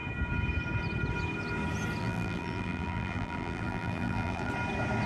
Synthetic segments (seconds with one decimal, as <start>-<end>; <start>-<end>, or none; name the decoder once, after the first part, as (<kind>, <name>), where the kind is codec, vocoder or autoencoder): 2.0-4.5 (vocoder, BigVGAN v2)